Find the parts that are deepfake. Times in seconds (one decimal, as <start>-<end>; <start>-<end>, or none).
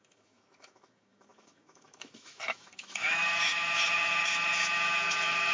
0.0-5.5